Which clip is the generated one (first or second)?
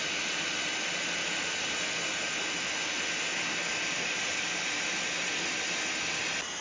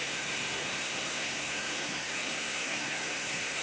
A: second